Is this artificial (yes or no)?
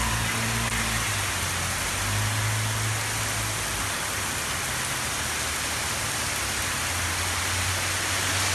no